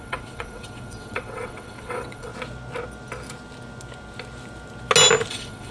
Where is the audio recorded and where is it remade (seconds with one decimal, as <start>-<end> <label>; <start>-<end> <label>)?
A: 0.0-2.3 remade; 2.3-5.3 recorded; 5.3-5.7 remade